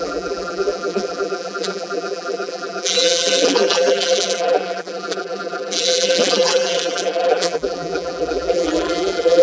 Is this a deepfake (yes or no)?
yes